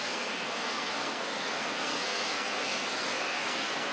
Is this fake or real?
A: fake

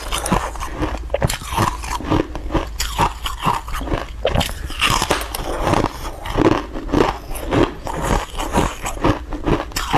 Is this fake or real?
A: real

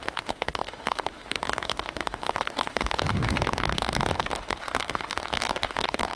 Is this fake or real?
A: fake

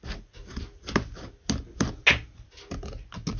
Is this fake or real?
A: real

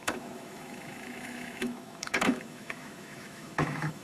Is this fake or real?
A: fake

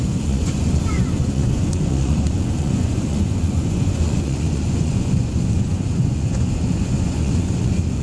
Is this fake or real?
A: fake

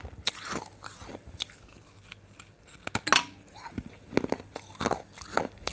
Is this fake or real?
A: real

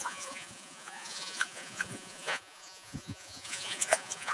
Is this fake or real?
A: fake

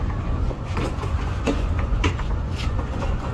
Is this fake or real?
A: fake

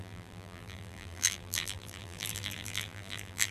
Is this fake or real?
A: fake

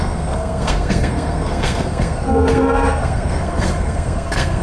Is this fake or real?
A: fake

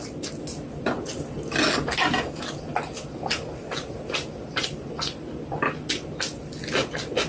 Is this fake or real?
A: real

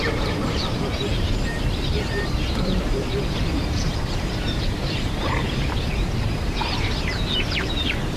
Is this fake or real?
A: fake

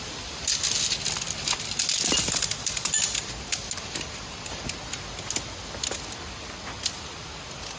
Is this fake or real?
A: real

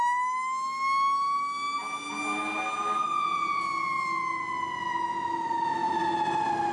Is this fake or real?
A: real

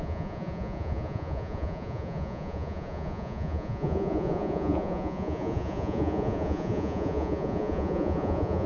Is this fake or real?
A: fake